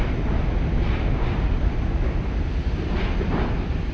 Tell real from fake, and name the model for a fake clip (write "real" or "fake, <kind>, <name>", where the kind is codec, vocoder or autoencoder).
real